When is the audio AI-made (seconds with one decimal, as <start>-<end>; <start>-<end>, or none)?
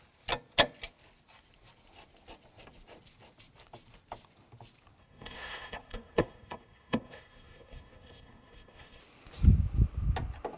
5.0-9.0